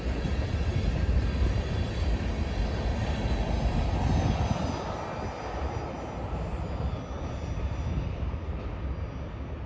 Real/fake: real